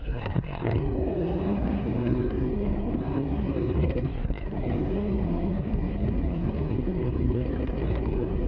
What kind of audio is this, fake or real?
fake